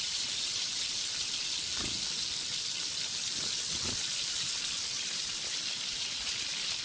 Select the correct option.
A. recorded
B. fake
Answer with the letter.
A